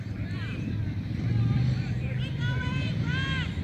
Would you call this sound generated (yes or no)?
yes